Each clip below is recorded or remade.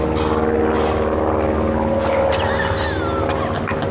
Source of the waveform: recorded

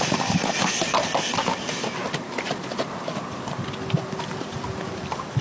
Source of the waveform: recorded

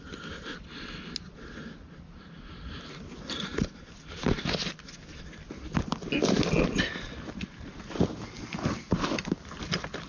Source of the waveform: recorded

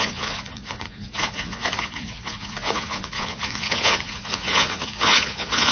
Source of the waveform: remade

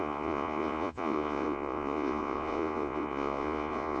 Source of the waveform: remade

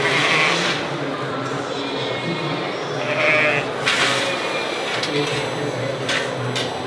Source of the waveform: recorded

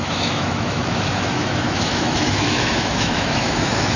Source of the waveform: remade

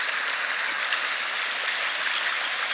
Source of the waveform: recorded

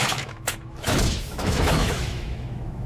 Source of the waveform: remade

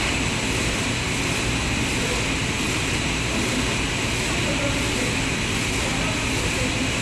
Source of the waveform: recorded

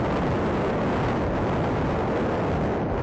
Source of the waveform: recorded